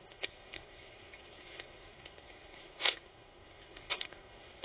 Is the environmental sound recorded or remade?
remade